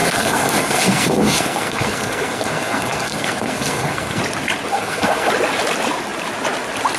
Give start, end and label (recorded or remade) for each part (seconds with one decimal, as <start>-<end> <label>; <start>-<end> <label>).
0.0-4.2 remade; 4.2-4.7 recorded; 4.7-5.3 remade; 5.3-7.0 recorded

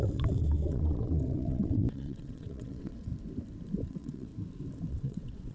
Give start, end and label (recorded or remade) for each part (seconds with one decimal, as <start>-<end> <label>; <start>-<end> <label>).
0.0-3.1 remade; 3.1-3.9 recorded; 3.9-4.3 remade; 4.3-4.9 recorded; 4.9-5.5 remade

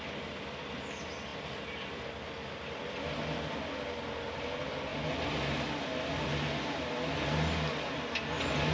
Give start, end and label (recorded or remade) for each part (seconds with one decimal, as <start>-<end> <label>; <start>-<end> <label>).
0.0-8.7 recorded

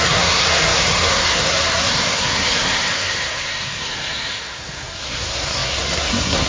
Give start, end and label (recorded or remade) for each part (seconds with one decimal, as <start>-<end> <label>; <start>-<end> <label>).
0.0-6.5 remade

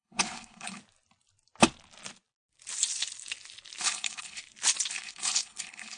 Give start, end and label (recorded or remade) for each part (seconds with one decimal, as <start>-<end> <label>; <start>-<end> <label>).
0.0-0.8 remade; 0.8-3.8 recorded; 3.8-4.4 remade; 4.4-4.9 recorded; 4.9-6.0 remade

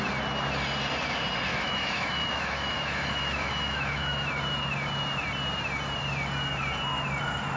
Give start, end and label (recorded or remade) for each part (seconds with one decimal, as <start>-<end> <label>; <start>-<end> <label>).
0.0-1.5 recorded; 1.5-4.3 remade; 4.3-7.6 recorded

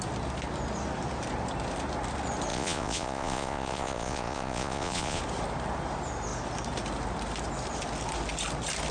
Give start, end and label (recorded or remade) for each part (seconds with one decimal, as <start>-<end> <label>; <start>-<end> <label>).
0.0-2.5 recorded; 2.5-5.2 remade; 5.2-8.9 recorded

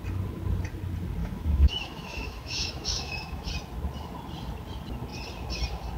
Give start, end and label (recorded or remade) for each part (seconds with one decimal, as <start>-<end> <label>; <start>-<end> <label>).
0.0-1.2 recorded; 1.2-3.5 remade; 3.5-6.0 recorded